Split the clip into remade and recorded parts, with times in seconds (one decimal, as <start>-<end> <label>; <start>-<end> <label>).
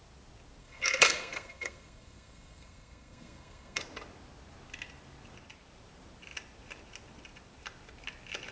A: 0.0-0.6 recorded; 0.6-3.8 remade; 3.8-8.5 recorded